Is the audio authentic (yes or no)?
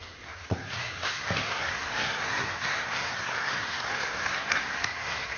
no